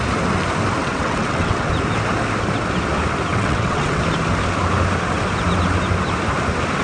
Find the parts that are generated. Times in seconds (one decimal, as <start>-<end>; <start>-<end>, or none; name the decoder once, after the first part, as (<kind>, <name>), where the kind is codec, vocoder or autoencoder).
0.8-1.7 (vocoder, WaveNeXt); 3.3-4.0